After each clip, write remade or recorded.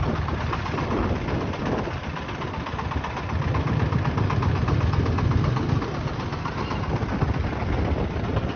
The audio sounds recorded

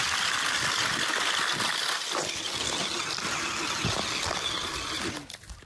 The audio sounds recorded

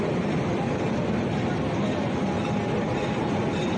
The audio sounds recorded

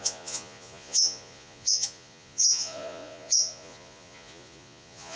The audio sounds remade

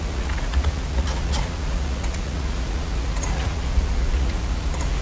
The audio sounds remade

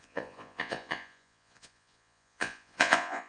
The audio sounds remade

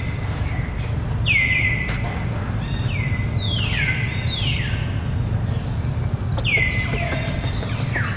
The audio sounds recorded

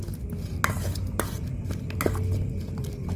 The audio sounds recorded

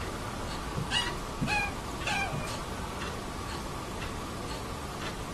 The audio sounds recorded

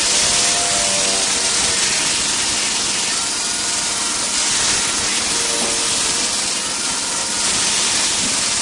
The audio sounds recorded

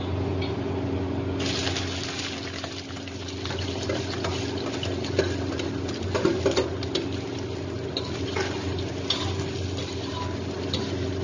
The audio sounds recorded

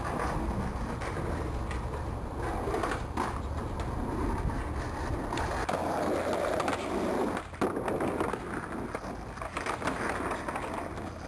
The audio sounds recorded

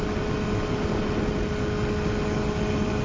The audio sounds recorded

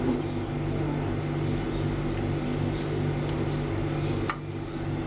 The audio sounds recorded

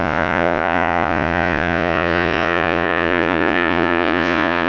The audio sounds remade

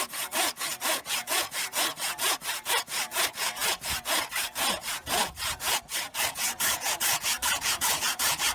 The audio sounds remade